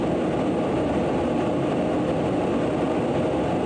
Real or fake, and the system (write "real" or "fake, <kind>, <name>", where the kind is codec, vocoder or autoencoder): real